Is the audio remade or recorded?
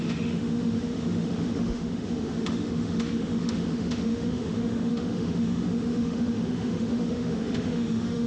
remade